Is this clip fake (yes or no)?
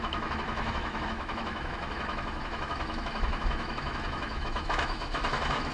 yes